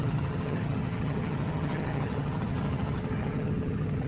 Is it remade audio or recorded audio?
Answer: remade